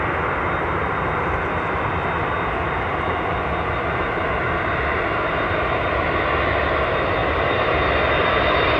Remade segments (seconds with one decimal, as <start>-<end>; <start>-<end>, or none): 7.2-7.8